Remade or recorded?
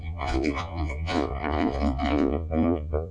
remade